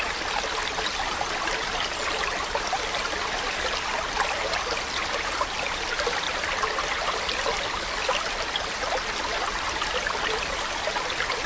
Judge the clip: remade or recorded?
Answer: recorded